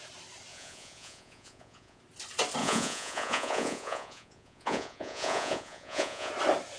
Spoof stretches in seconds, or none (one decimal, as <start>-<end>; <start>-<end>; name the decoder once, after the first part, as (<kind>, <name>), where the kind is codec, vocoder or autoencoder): 0.5-2.0 (vocoder, Vocos); 2.6-6.3